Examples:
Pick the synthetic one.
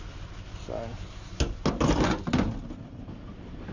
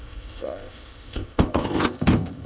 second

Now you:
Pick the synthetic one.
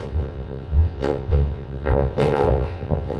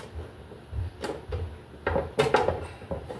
first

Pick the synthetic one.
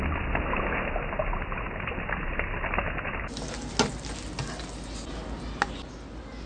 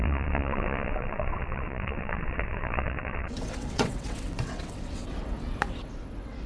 second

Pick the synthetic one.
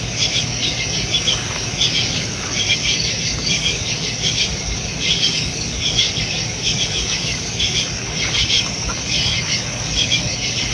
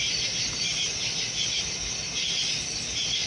first